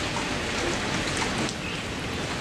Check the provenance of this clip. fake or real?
real